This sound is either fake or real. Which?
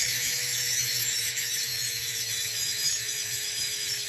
fake